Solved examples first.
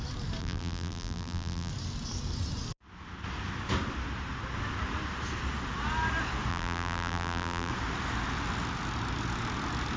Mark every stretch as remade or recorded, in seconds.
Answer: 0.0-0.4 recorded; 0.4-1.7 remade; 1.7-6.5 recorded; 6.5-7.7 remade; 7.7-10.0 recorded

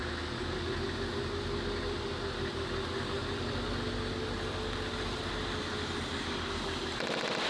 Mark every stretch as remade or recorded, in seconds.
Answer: 0.0-7.5 recorded

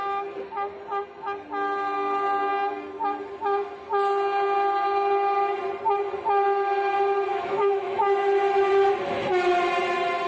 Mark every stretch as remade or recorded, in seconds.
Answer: 0.0-7.3 recorded; 7.3-8.0 remade; 8.0-10.3 recorded